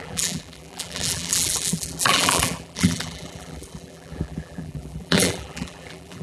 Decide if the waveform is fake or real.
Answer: fake